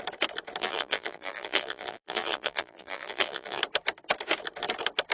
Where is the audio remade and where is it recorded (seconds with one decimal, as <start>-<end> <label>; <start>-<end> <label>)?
0.0-0.6 recorded; 0.6-3.6 remade; 3.6-5.1 recorded